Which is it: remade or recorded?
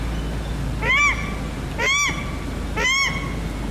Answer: recorded